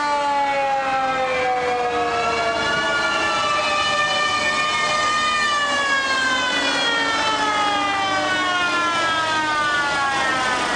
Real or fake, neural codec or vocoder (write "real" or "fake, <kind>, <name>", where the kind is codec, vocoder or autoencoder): real